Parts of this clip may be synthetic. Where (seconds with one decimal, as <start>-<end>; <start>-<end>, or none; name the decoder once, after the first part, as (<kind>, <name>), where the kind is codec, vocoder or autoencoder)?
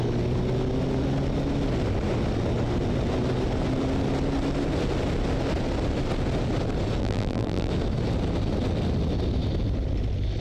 7.0-7.7 (vocoder, BigVGAN v2)